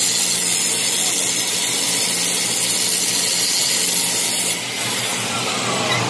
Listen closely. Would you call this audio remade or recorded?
recorded